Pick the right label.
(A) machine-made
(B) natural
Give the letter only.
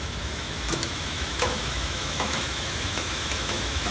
A